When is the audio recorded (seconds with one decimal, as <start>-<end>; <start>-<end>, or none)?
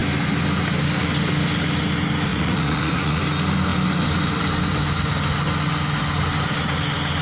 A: 0.0-2.3; 3.2-7.2